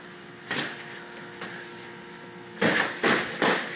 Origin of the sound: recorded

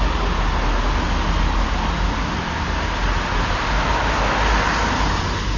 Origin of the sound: recorded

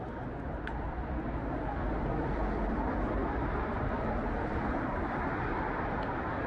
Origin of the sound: recorded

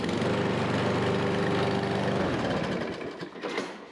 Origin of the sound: recorded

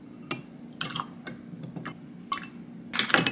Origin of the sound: recorded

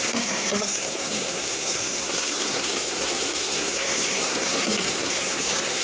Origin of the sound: remade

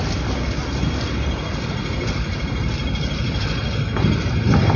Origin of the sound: recorded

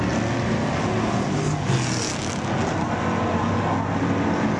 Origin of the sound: recorded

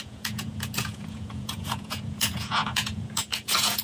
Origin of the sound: remade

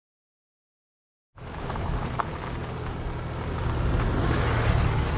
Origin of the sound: recorded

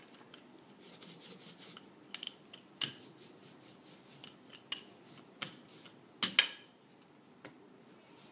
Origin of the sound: recorded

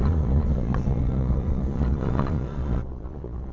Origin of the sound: remade